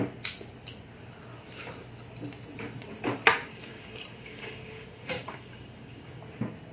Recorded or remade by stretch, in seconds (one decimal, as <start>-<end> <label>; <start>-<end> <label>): 0.0-3.5 recorded; 3.5-6.2 remade; 6.2-6.7 recorded

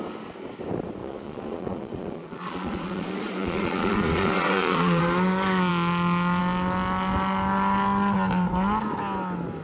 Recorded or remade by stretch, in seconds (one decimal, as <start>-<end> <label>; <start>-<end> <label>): 0.0-1.0 recorded; 1.0-5.0 remade; 5.0-9.6 recorded

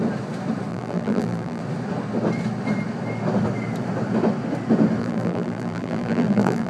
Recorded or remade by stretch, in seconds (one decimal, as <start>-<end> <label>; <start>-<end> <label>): 0.0-0.7 recorded; 0.7-1.6 remade; 1.6-5.0 recorded; 5.0-6.7 remade

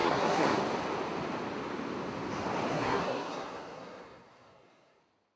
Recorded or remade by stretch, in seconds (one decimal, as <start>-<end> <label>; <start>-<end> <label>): 0.0-0.6 remade; 0.6-2.7 recorded; 2.7-5.0 remade; 5.0-5.4 recorded

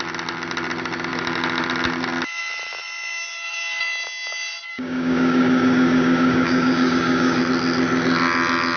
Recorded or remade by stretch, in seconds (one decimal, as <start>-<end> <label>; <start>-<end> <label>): 0.0-4.7 recorded; 4.7-7.4 remade; 7.4-8.8 recorded

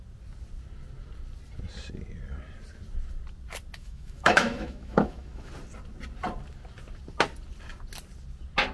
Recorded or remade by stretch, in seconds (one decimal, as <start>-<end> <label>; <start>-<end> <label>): 0.0-3.8 recorded; 3.8-5.5 remade; 5.5-8.7 recorded